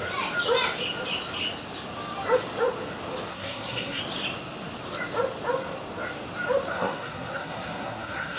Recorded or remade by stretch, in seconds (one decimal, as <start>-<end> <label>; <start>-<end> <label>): 0.0-3.3 recorded; 3.3-4.0 remade; 4.0-6.7 recorded; 6.7-8.4 remade